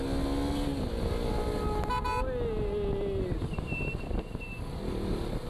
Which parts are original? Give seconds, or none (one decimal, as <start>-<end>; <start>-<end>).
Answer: 0.0-5.5